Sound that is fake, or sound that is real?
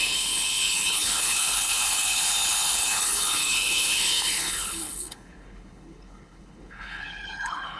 fake